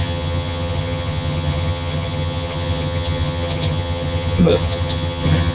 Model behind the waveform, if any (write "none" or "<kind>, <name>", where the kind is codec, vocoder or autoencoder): vocoder, HiFi-GAN